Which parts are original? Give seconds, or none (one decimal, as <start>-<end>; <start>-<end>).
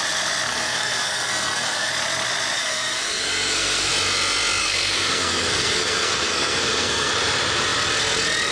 0.0-0.5; 1.9-2.6; 3.9-4.6; 7.1-8.5